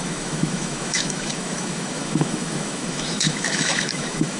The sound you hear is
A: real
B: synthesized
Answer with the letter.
B